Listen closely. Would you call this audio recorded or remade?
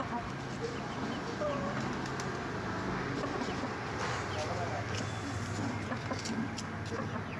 recorded